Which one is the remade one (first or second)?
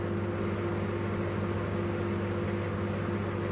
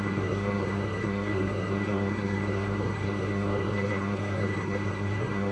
second